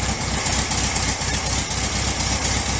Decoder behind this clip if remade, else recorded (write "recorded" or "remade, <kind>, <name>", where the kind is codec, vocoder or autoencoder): recorded